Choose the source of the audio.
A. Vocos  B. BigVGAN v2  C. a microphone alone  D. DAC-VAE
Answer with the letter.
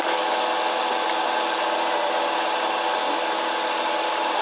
C